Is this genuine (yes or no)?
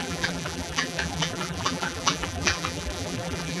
no